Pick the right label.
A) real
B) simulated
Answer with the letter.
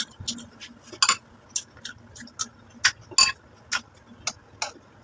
A